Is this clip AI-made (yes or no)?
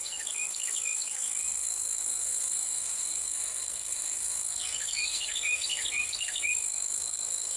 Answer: yes